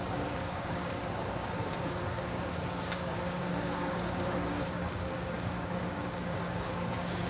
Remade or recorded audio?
remade